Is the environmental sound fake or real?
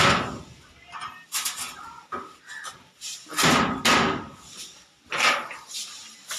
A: real